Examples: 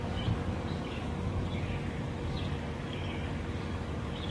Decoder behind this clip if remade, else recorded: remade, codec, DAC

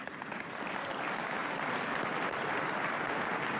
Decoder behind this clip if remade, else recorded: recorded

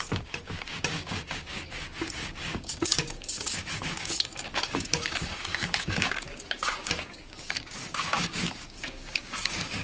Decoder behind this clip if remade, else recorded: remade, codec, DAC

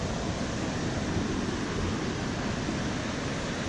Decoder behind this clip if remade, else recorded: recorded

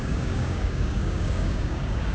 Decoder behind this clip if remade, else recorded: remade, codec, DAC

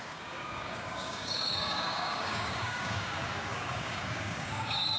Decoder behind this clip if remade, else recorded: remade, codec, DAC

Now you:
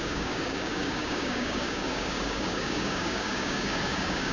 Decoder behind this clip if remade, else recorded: remade, codec, DAC